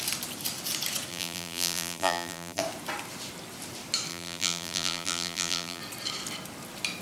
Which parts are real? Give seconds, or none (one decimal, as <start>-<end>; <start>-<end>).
0.0-1.1; 2.6-4.1; 5.8-7.0